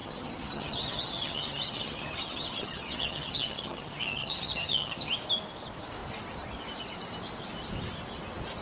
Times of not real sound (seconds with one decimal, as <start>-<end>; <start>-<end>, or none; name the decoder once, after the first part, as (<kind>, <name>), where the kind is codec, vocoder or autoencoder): 0.0-5.1 (vocoder, HiFi-GAN)